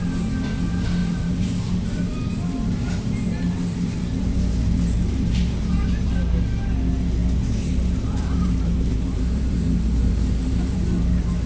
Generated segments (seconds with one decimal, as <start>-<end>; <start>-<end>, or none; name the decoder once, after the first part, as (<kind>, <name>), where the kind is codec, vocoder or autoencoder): 1.0-6.1 (vocoder, BigVGAN v2); 7.2-11.5